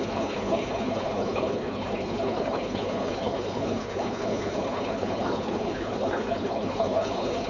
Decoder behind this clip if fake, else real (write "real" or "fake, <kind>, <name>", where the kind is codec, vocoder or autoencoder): fake, codec, HILCodec